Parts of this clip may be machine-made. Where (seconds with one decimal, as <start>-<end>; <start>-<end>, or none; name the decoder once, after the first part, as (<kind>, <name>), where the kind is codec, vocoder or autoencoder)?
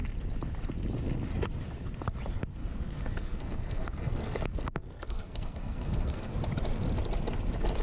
2.6-6.3 (codec, SNAC)